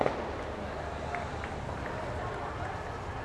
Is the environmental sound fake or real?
real